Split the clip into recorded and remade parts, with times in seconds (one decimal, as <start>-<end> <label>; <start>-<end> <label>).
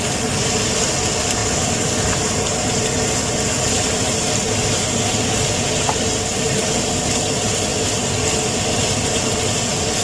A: 0.0-10.0 recorded